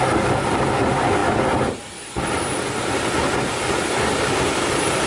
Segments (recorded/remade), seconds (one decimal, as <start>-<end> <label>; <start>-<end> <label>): 0.0-1.2 recorded; 1.2-2.8 remade; 2.8-5.1 recorded